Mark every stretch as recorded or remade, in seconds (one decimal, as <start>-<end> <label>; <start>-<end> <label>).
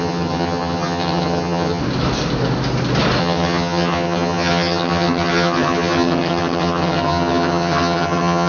0.0-1.8 remade; 1.8-3.2 recorded; 3.2-8.5 remade